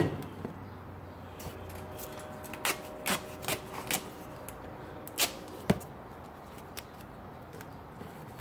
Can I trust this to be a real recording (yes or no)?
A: yes